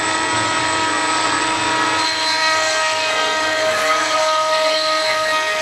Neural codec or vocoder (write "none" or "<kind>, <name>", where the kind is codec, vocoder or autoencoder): codec, SNAC